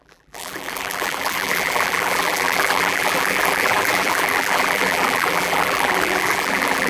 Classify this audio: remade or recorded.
remade